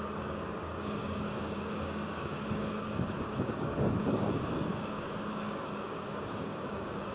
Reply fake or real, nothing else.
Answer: fake